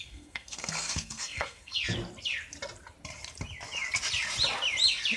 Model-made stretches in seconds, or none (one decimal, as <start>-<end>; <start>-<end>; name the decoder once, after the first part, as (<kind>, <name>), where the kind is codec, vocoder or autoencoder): 0.0-1.8 (codec, SNAC)